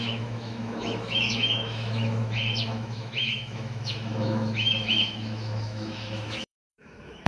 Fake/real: fake